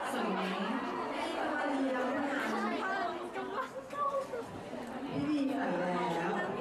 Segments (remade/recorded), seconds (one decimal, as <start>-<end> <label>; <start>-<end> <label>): 0.0-6.6 recorded